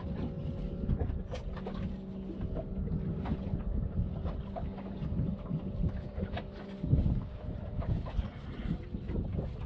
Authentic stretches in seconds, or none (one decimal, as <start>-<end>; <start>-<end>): 0.0-0.4; 1.0-3.6; 8.6-9.7